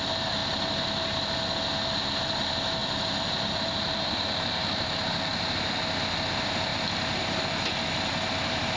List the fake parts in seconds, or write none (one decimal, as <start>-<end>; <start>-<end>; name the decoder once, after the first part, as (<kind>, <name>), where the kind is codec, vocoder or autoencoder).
2.8-5.7 (vocoder, BigVGAN v2)